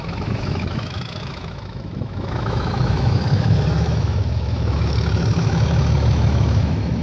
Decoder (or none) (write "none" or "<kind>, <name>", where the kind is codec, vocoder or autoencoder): autoencoder, DAC-VAE